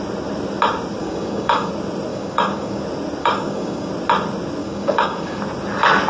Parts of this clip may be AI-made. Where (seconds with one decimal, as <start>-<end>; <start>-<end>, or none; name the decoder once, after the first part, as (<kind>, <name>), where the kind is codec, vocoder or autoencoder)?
1.0-1.7 (codec, DAC); 2.1-2.8; 3.2-3.9; 4.6-5.4